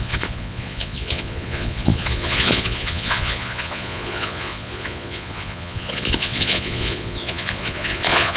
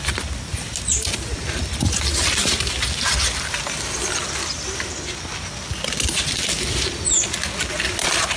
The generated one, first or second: first